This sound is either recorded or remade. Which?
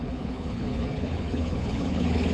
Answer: remade